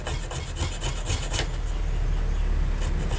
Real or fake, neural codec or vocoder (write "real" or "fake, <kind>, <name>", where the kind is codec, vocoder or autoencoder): real